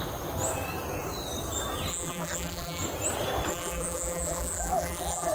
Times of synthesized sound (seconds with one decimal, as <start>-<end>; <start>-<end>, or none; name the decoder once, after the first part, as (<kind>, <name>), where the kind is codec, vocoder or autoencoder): 1.9-2.8 (vocoder, BigVGAN v2); 3.5-5.3